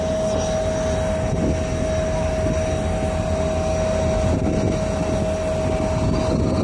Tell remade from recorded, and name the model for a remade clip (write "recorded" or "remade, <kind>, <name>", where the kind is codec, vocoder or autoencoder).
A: recorded